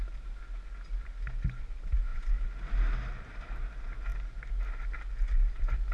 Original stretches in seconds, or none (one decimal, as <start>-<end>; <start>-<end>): 0.0-5.9